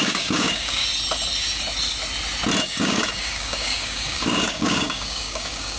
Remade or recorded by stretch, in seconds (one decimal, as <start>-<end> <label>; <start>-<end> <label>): 0.0-0.8 remade; 0.8-2.6 recorded; 2.6-5.8 remade